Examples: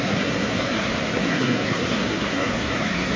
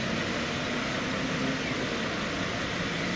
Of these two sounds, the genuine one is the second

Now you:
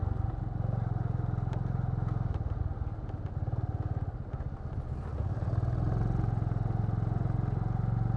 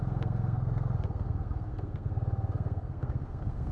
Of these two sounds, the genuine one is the first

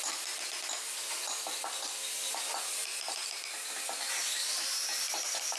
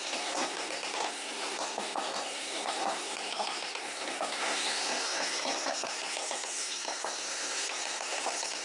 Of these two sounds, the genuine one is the first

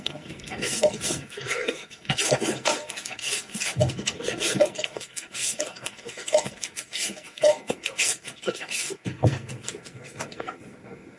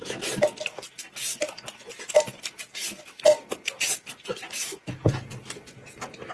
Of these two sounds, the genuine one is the second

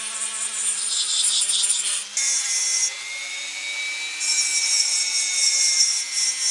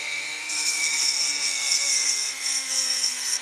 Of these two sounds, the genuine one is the first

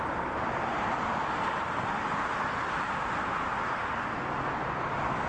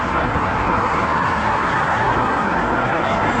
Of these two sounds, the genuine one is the first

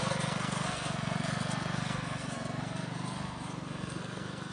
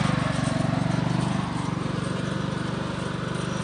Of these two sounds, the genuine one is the second